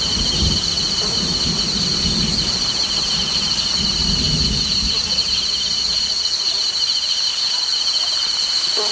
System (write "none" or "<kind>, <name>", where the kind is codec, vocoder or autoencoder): none